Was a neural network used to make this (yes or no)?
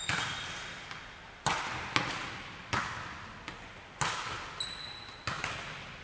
no